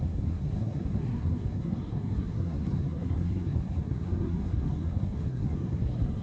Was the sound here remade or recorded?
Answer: remade